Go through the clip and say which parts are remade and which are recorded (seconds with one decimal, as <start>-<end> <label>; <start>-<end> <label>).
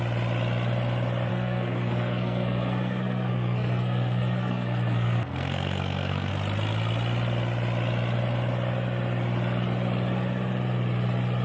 0.0-1.3 recorded; 1.3-6.3 remade; 6.3-11.4 recorded